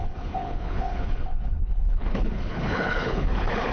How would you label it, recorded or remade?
remade